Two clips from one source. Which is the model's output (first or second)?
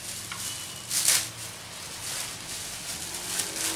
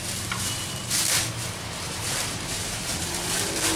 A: second